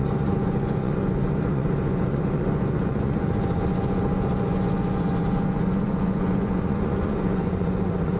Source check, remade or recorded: remade